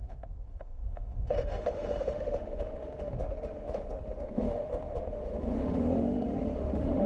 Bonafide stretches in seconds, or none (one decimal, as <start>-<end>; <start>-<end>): none